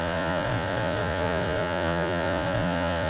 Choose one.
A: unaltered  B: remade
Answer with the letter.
B